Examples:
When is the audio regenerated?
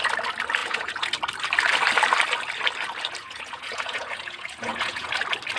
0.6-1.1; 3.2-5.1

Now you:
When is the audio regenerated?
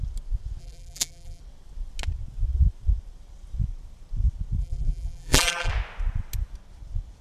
0.6-1.4; 4.6-5.7